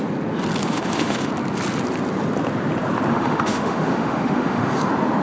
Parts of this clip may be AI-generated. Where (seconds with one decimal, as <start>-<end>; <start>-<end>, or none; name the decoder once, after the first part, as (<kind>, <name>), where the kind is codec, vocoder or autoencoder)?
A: 0.6-1.3 (autoencoder, DAC-VAE); 3.1-4.6